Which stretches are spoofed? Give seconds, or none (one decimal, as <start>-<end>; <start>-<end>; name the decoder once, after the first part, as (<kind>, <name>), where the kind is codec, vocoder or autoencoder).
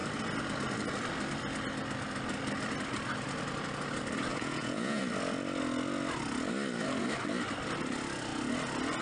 4.3-5.0 (vocoder, Vocos)